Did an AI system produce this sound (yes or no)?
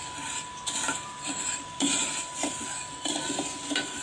no